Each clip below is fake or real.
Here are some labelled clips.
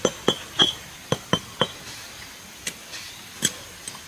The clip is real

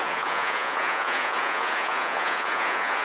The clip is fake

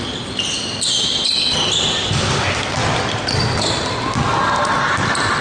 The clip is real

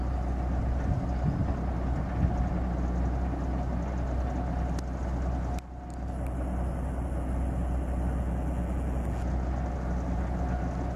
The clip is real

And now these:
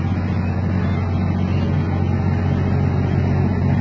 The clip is real